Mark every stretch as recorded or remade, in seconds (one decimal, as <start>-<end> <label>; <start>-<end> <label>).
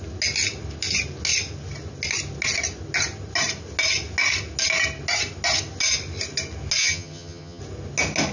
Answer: 0.0-6.8 recorded; 6.8-7.6 remade; 7.6-8.3 recorded